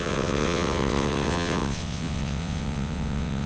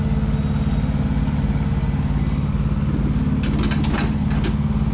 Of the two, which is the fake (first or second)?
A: first